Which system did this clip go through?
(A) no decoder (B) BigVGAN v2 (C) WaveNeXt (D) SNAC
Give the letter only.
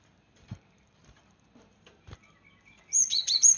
B